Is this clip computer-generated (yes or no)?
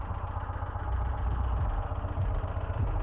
no